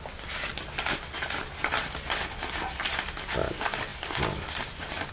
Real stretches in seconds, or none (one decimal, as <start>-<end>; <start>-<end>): 0.0-5.1